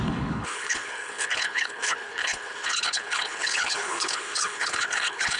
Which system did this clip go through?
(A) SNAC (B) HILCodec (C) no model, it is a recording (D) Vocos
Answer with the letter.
B